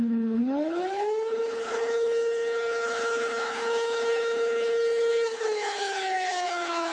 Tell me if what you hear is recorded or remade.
remade